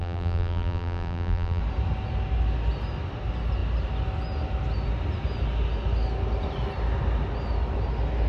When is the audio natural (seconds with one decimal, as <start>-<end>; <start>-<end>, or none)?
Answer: 1.6-8.3